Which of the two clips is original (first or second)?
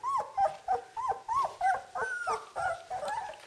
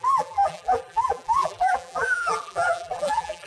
first